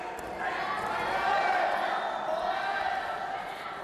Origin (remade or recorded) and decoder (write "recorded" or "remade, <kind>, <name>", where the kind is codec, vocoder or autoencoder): recorded